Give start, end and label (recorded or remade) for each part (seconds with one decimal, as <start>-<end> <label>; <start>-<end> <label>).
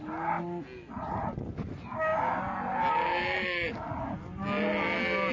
0.0-5.3 recorded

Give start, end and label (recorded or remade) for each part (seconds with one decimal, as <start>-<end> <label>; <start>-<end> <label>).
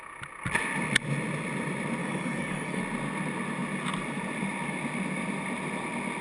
0.0-2.0 recorded; 2.0-2.8 remade; 2.8-6.2 recorded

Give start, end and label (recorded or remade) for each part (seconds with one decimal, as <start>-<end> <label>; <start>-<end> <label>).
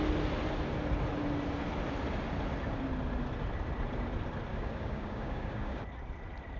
0.0-4.5 recorded; 4.5-5.8 remade; 5.8-6.6 recorded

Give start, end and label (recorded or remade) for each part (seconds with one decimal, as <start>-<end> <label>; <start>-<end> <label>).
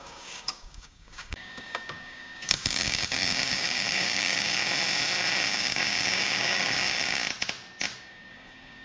0.0-4.6 remade; 4.6-5.6 recorded; 5.6-7.2 remade; 7.2-8.0 recorded; 8.0-8.8 remade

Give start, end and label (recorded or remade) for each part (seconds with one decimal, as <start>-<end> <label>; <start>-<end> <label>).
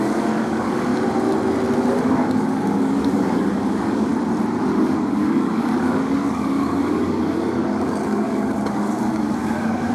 0.0-0.9 remade; 0.9-1.9 recorded; 1.9-4.1 remade; 4.1-4.6 recorded; 4.6-9.9 remade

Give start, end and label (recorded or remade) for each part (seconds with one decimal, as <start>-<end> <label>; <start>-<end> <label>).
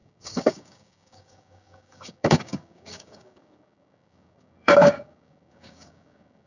0.0-6.5 remade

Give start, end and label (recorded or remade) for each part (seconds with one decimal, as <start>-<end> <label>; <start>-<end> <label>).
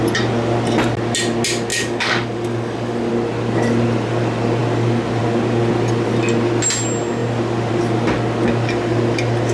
0.0-1.7 recorded; 1.7-3.1 remade; 3.1-9.5 recorded